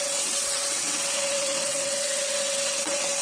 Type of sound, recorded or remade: remade